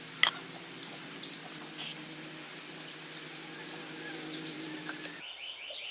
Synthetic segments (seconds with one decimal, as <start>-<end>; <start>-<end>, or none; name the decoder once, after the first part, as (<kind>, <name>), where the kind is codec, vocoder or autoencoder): none